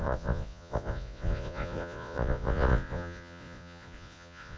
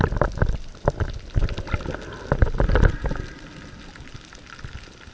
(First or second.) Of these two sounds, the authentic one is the second